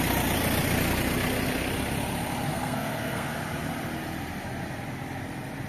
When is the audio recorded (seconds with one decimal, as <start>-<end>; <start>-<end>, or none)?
0.0-2.5; 3.3-5.7